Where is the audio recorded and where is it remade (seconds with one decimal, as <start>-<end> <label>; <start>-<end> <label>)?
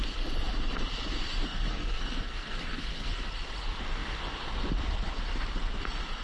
0.0-1.4 recorded; 1.4-3.3 remade; 3.3-6.2 recorded